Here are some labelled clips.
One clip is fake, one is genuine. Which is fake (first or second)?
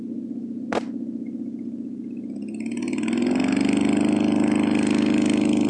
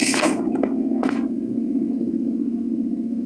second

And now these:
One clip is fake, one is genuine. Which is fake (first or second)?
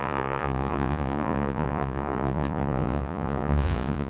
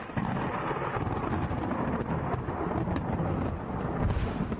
first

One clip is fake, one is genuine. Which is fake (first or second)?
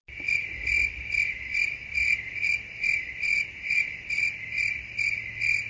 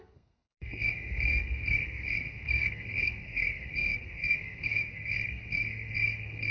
second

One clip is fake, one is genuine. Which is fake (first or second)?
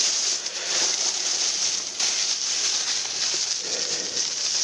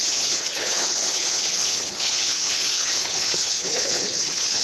second